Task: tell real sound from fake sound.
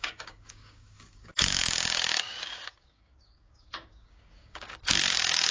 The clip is fake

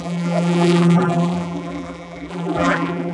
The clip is fake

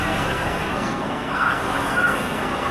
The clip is fake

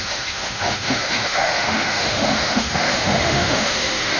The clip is fake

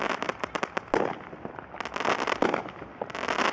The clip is real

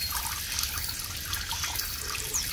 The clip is real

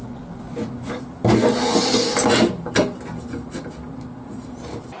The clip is real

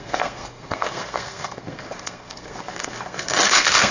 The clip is fake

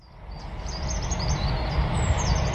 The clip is real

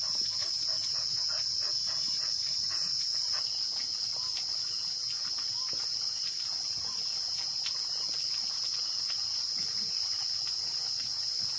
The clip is real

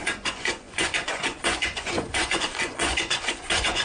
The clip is fake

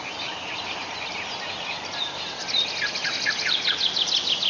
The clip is real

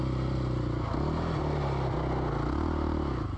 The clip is real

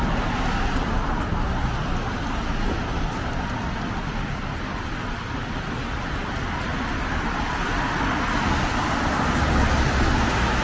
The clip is real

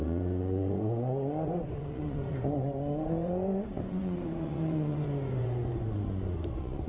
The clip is fake